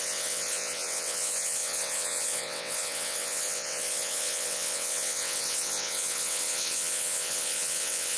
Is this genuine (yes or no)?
no